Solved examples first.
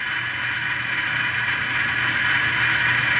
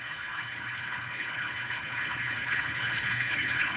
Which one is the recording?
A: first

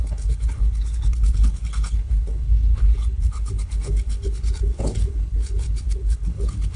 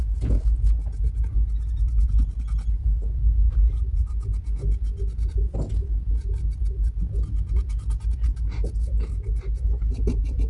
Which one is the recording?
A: second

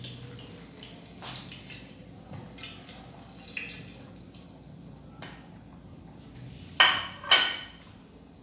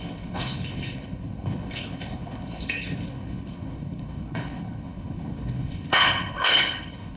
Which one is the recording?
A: first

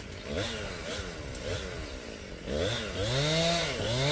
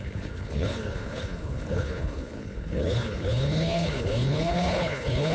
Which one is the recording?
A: first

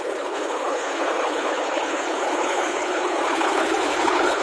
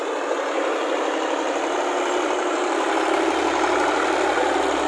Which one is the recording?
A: second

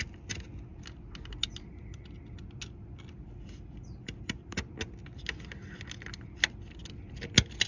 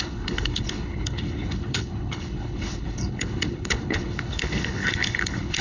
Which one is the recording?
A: first